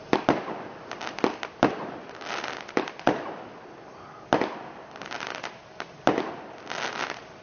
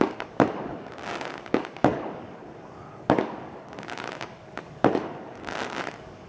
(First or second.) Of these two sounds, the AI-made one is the second